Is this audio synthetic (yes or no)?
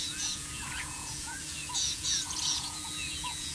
yes